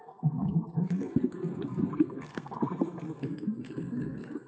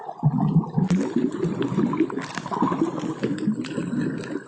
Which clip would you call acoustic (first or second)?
second